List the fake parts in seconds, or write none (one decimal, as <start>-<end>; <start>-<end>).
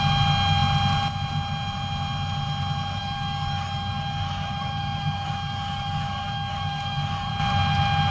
3.0-7.3